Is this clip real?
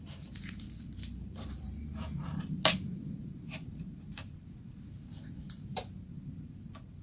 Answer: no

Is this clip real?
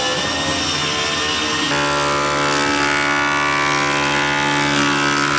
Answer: yes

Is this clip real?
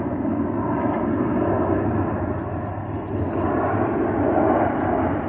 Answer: yes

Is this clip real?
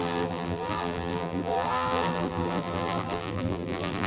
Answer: no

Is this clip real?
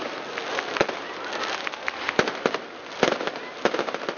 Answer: yes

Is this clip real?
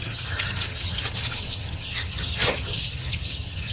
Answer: no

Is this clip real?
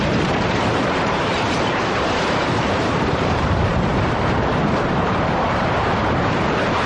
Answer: no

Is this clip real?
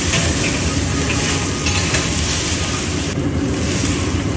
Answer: yes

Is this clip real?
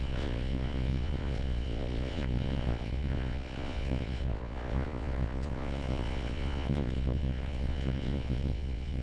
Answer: no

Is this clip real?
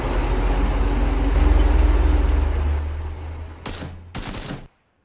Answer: yes